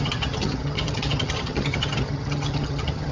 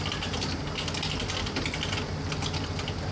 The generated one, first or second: first